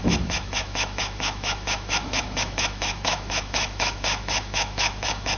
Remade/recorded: remade